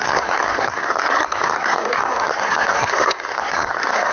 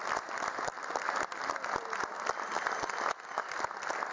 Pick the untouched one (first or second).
second